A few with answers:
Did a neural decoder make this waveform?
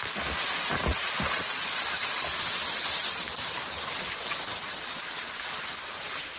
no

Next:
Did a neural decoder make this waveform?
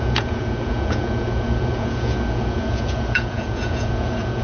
yes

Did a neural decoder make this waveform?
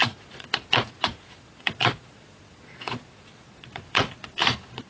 yes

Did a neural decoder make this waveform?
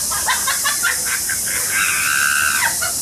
no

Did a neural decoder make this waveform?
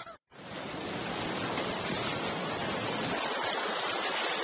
no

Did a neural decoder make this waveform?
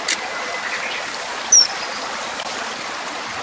no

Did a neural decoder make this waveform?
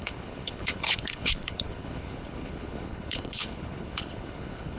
yes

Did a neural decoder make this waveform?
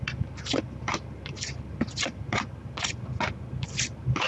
no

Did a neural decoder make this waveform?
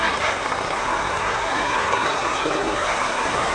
yes